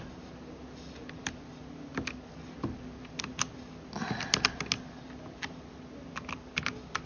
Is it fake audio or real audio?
real